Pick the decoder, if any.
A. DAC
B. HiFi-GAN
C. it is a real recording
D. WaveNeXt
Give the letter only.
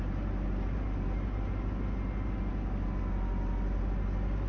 C